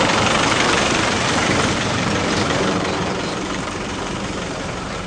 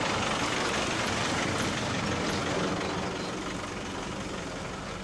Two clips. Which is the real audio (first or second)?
second